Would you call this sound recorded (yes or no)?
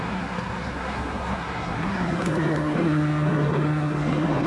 no